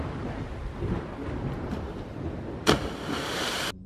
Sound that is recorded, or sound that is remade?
recorded